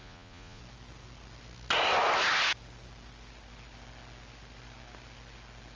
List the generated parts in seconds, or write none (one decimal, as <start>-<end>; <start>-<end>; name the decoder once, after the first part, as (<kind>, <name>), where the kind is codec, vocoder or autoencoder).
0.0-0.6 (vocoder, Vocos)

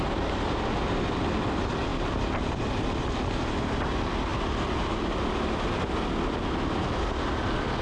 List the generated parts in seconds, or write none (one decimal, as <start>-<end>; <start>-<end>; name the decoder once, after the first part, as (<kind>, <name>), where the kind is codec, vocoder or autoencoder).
none

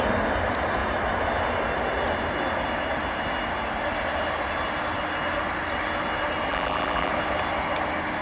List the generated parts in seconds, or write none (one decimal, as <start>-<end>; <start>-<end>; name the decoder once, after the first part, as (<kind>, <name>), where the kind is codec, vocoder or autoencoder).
6.5-7.1 (vocoder, BigVGAN v2)

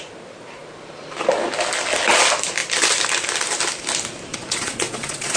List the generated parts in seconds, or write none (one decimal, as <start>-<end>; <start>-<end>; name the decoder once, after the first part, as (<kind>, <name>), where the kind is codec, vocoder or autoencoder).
4.3-5.4 (vocoder, Vocos)